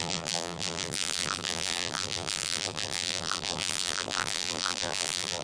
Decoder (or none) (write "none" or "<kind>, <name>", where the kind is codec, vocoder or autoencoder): vocoder, BigVGAN v2